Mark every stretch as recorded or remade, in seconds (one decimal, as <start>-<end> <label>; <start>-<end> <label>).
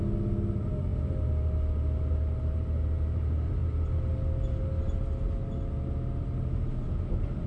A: 0.0-7.5 recorded